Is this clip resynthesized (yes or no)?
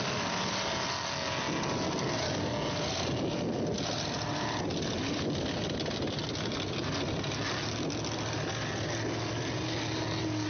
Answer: no